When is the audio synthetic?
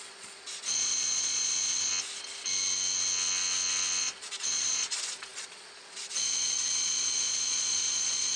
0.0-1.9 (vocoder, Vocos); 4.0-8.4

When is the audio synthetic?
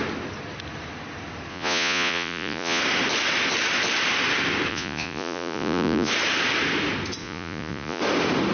1.5-2.8 (vocoder, Vocos); 4.7-6.1; 7.2-8.0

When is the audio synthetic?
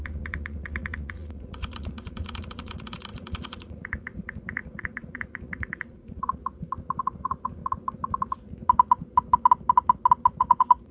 0.0-6.4 (vocoder, Vocos); 7.0-7.6; 10.4-10.9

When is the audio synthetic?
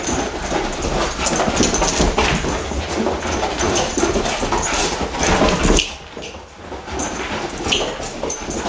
none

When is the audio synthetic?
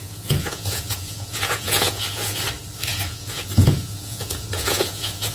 0.0-2.4 (vocoder, Vocos); 2.9-5.3